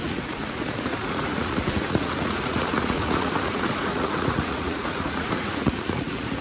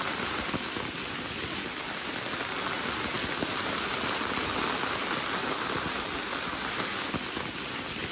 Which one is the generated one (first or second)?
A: first